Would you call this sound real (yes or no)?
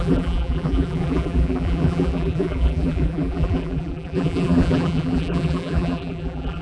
no